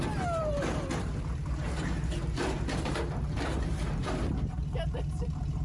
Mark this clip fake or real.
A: fake